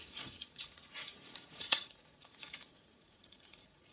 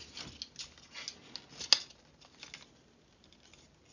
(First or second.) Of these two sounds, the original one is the second